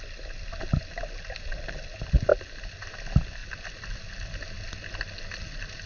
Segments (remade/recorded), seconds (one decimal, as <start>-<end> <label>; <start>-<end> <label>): 0.0-5.9 recorded

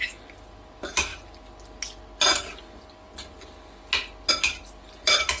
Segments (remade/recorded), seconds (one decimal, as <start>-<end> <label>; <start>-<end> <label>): 0.0-5.4 recorded

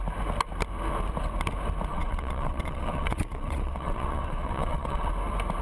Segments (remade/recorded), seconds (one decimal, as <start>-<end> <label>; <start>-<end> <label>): 0.0-1.9 recorded; 1.9-5.1 remade; 5.1-5.6 recorded

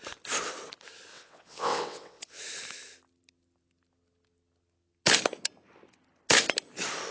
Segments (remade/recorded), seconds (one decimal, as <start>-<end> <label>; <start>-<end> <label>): 0.0-1.1 recorded; 1.1-2.4 remade; 2.4-7.1 recorded

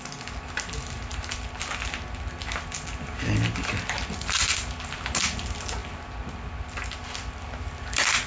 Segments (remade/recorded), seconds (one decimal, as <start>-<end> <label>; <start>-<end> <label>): 0.0-8.3 recorded

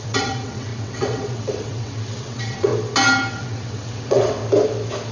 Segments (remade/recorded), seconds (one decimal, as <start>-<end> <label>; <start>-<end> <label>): 0.0-2.7 remade; 2.7-3.3 recorded; 3.3-4.4 remade; 4.4-5.1 recorded

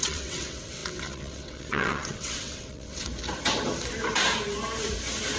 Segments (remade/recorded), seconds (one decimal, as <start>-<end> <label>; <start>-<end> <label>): 0.0-3.1 remade; 3.1-5.4 recorded